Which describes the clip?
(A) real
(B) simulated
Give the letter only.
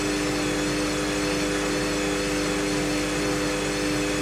A